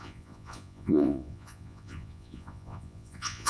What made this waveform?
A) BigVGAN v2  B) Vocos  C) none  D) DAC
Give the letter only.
B